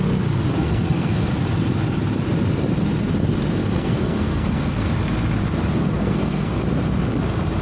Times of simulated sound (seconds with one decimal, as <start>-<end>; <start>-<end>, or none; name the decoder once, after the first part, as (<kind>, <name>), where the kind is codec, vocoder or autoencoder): 0.6-1.3 (codec, SNAC); 3.6-4.9; 5.8-6.6